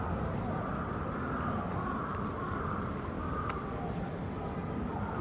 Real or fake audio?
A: real